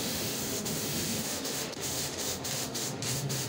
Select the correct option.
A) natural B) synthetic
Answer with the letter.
B